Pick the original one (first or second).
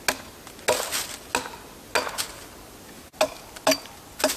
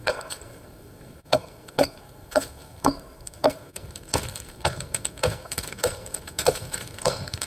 first